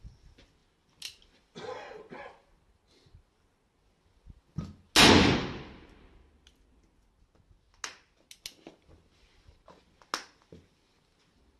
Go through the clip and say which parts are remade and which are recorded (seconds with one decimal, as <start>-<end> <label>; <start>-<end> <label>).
0.0-11.6 recorded